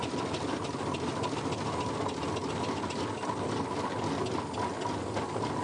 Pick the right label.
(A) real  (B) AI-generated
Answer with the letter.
A